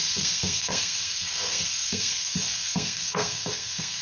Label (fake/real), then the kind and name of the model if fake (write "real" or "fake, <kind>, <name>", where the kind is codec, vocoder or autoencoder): fake, codec, SNAC